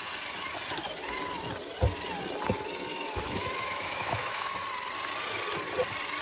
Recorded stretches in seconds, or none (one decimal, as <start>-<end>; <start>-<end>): 0.0-2.9; 4.5-6.2